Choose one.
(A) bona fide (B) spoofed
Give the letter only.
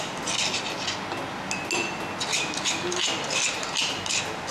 A